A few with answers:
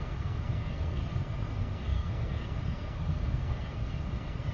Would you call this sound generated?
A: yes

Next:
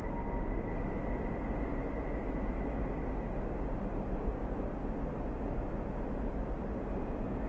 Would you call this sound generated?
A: no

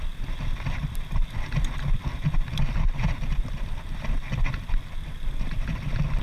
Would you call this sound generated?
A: no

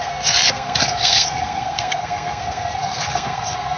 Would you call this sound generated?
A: yes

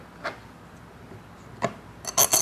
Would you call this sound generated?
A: no